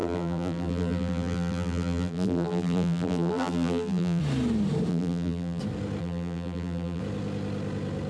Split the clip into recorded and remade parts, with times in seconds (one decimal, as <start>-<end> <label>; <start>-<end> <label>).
0.0-4.2 remade; 4.2-4.9 recorded; 4.9-5.6 remade; 5.6-6.0 recorded; 6.0-7.0 remade; 7.0-8.1 recorded